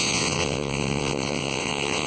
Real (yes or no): no